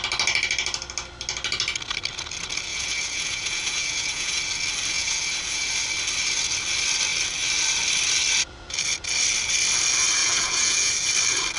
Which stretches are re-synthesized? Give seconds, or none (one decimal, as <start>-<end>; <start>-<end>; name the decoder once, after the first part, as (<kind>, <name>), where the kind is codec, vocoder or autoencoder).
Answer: 2.7-4.4 (vocoder, Vocos); 4.9-5.7; 10.2-10.9